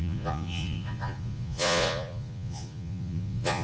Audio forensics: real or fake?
fake